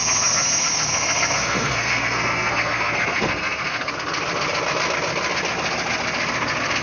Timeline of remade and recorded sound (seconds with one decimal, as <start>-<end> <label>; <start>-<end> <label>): 0.0-3.9 remade; 3.9-6.8 recorded